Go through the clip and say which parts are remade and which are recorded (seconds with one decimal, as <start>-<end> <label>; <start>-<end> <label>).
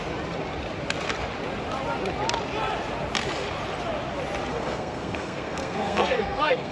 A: 0.0-4.5 recorded; 4.5-6.7 remade